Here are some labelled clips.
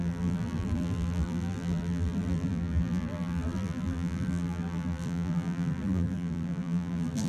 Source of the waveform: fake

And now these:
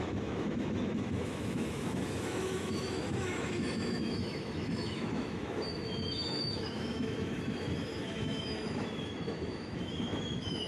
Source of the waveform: fake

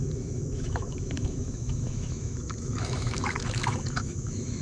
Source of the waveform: fake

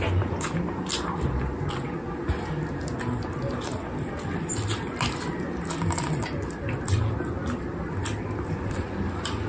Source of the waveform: real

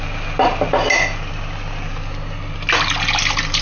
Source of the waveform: real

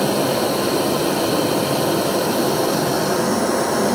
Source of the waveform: real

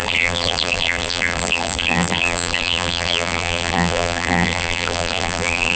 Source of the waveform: fake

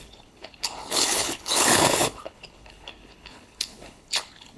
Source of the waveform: fake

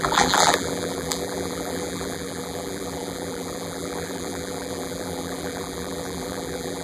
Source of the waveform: fake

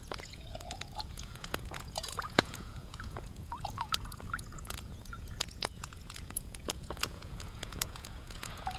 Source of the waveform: fake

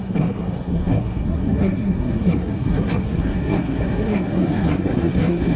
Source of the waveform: fake